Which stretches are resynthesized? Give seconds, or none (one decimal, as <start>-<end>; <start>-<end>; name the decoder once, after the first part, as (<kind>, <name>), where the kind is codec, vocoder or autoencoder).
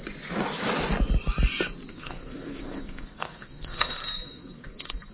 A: 1.9-5.1 (codec, SNAC)